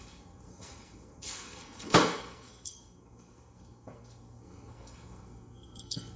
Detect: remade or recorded remade